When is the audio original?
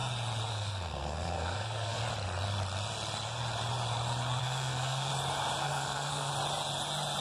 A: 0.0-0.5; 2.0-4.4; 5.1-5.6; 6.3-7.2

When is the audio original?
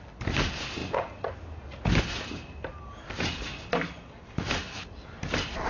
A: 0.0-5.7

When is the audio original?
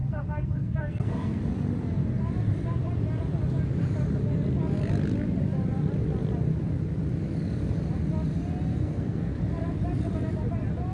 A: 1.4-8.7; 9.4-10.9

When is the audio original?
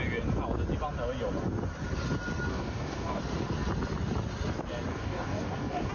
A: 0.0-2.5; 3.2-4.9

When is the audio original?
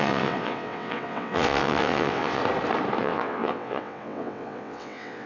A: 2.4-3.0